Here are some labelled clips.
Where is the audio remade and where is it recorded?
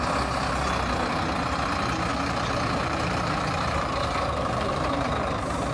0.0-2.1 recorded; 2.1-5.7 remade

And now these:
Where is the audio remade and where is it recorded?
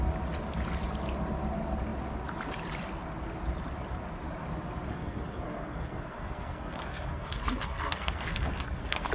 0.0-4.9 recorded; 4.9-9.1 remade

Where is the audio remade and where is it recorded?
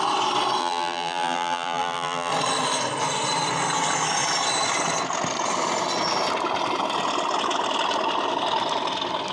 0.0-0.6 recorded; 0.6-2.3 remade; 2.3-9.3 recorded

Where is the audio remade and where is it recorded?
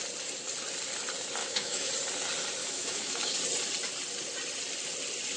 0.0-1.4 recorded; 1.4-1.9 remade; 1.9-2.6 recorded; 2.6-3.3 remade; 3.3-5.4 recorded